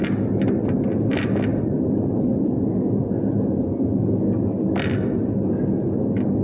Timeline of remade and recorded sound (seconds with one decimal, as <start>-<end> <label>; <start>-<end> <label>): 0.0-6.4 recorded